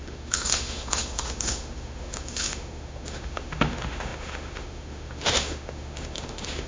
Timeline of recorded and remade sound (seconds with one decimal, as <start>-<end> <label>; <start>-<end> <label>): 0.0-6.7 remade